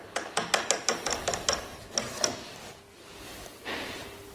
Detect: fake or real real